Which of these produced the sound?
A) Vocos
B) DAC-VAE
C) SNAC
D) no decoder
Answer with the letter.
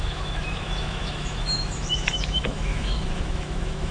B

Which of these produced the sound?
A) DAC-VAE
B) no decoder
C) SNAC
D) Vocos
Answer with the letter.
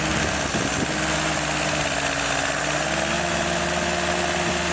B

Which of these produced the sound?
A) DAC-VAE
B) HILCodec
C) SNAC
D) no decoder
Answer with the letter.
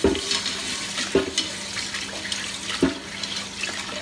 D